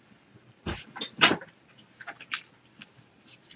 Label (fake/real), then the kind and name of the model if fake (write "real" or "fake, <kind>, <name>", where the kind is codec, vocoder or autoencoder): real